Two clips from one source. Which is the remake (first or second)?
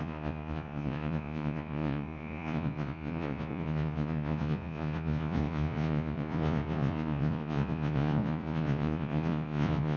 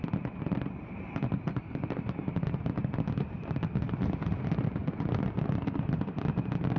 first